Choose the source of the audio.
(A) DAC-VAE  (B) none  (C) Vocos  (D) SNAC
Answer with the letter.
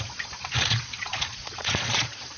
C